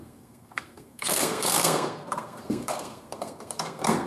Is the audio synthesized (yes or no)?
yes